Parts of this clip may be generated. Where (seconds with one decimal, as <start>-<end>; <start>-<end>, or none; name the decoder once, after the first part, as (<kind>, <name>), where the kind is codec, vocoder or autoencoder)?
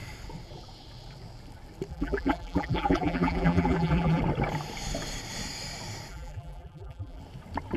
1.9-4.2 (vocoder, BigVGAN v2); 6.1-7.2